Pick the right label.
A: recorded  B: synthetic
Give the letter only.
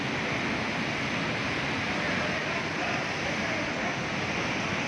A